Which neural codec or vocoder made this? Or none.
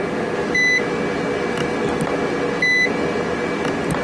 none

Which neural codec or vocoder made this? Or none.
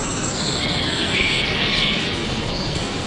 codec, SNAC